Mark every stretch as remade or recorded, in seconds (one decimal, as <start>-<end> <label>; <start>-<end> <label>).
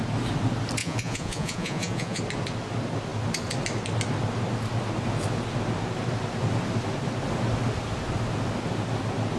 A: 0.0-0.8 recorded; 0.8-2.2 remade; 2.2-9.4 recorded